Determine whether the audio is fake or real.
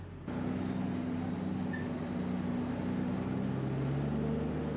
real